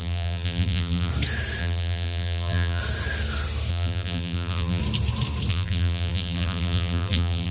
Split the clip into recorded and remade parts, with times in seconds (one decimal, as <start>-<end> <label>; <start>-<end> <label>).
0.0-1.1 remade; 1.1-1.6 recorded; 1.6-2.8 remade; 2.8-3.7 recorded; 3.7-4.8 remade; 4.8-5.5 recorded; 5.5-7.5 remade